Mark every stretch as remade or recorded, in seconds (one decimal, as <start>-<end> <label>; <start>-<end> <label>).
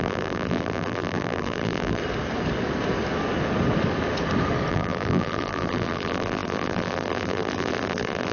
0.0-2.0 remade; 2.0-4.7 recorded; 4.7-8.3 remade